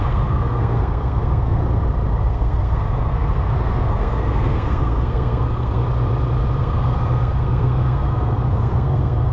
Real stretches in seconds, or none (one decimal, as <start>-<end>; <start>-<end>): 1.6-2.2; 5.8-6.6